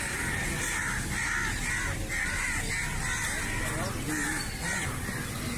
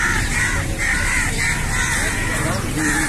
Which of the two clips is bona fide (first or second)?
first